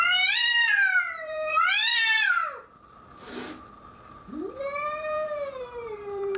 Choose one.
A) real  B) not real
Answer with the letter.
B